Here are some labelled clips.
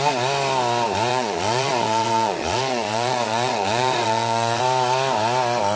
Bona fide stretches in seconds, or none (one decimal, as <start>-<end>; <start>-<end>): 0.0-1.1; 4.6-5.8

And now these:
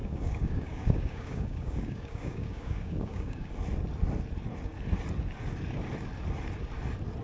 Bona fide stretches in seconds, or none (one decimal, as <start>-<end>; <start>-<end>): 3.5-7.2

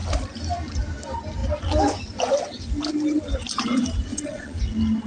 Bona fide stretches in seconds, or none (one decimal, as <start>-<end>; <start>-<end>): 0.0-4.1; 4.6-5.1